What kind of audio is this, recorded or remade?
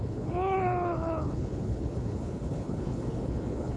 remade